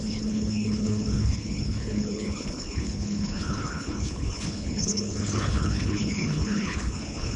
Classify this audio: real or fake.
fake